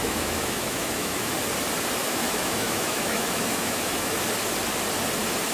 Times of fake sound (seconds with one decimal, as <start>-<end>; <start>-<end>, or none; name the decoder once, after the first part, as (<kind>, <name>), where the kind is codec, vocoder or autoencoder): 0.0-1.3 (autoencoder, DAC-VAE); 2.0-4.2